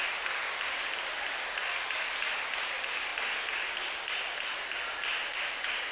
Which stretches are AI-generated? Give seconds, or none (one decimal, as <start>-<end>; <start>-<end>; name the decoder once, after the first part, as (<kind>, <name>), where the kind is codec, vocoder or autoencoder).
none